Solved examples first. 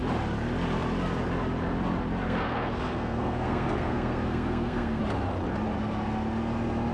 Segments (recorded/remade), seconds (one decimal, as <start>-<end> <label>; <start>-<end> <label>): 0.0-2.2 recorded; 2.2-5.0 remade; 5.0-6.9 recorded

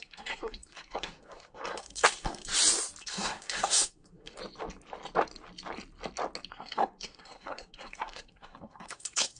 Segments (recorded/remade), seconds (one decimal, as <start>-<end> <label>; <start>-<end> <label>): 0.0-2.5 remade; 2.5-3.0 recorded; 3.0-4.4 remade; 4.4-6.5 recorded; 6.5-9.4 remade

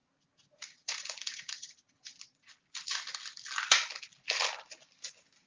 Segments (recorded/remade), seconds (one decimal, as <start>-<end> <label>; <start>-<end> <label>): 0.0-2.5 remade; 2.5-5.5 recorded